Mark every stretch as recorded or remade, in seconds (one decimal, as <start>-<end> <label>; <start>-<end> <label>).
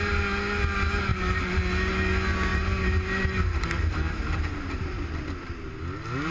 0.0-1.1 recorded; 1.1-1.6 remade; 1.6-2.5 recorded; 2.5-5.0 remade; 5.0-6.3 recorded